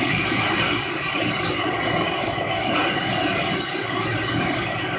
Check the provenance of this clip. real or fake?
fake